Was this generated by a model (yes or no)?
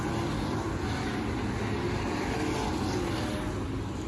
no